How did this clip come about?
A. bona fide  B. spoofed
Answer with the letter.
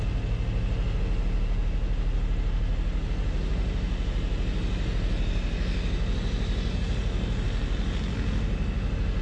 A